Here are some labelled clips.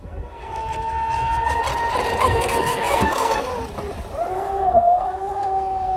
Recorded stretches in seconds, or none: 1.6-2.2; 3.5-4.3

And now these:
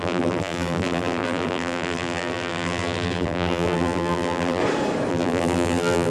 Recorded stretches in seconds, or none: 4.6-5.1

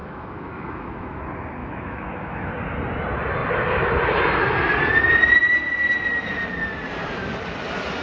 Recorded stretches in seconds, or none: 1.2-1.6; 2.5-8.0

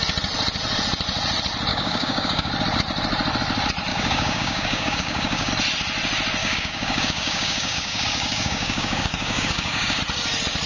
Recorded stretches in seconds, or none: 0.0-1.7; 2.5-3.9; 5.5-6.4; 10.0-10.7

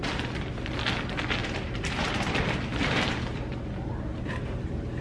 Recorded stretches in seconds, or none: 0.0-1.4; 2.3-2.8; 3.5-4.1

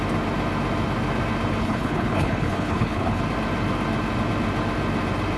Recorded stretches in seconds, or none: 0.0-1.6; 3.2-5.4

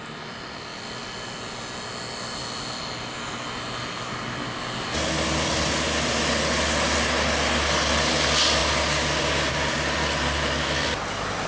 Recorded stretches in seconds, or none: 0.0-11.5